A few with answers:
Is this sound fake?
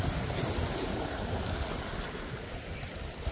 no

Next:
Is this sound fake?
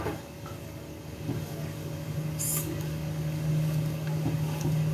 yes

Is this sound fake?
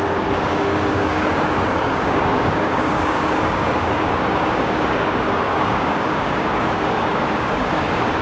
yes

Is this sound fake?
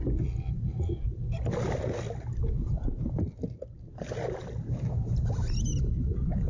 no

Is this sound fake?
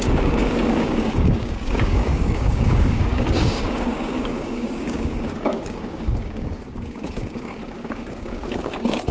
yes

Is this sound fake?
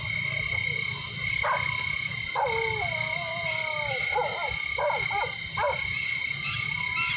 no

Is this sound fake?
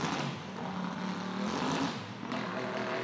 no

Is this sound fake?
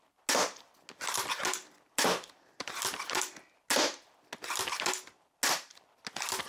no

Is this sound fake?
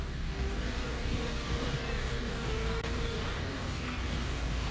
yes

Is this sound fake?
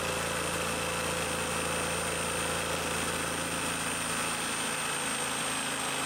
no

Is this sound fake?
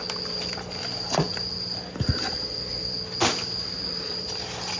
no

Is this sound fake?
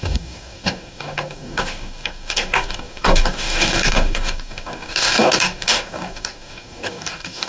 yes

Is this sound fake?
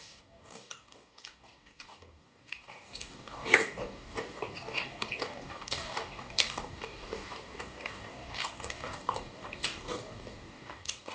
yes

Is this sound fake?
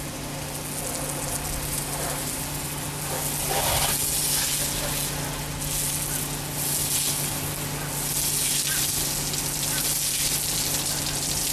no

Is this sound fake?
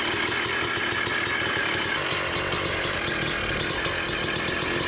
no